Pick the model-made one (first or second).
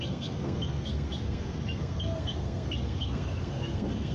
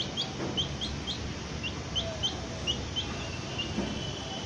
first